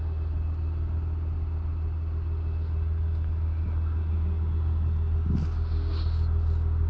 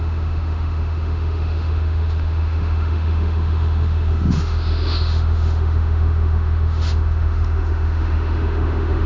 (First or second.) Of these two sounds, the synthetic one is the second